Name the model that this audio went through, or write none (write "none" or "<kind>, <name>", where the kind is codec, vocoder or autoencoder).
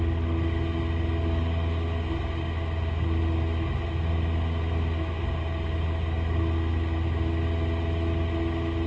none